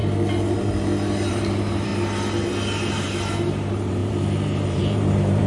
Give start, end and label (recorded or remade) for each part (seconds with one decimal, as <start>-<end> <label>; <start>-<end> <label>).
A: 0.0-1.3 recorded; 1.3-1.9 remade; 1.9-2.9 recorded; 2.9-5.5 remade